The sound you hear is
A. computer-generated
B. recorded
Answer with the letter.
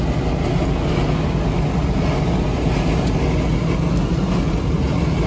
B